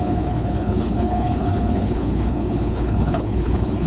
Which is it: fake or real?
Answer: fake